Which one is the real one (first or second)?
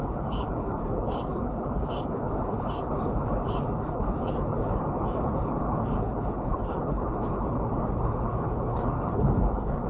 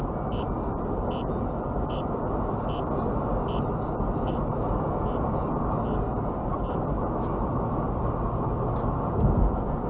second